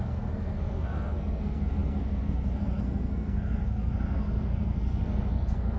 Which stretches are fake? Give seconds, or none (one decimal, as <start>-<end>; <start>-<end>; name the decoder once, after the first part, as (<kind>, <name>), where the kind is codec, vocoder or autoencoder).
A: 0.0-5.8 (codec, SNAC)